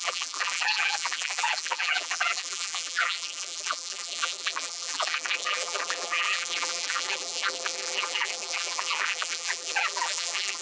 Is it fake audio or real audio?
fake